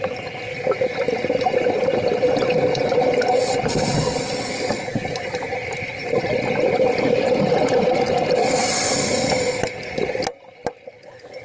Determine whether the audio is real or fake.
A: real